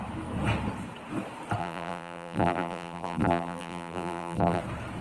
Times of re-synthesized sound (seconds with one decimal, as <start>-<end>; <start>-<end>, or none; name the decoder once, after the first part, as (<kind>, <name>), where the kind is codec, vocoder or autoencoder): 1.6-4.6 (vocoder, BigVGAN v2)